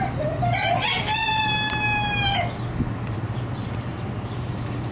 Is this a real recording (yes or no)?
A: yes